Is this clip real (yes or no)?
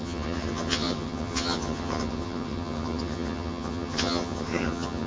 no